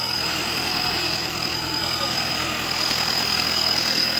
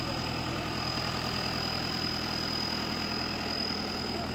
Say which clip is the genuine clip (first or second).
second